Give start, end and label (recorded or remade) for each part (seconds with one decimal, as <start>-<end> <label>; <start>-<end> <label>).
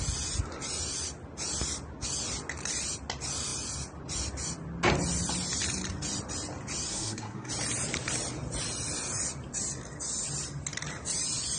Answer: 0.0-6.9 recorded; 6.9-7.5 remade; 7.5-11.6 recorded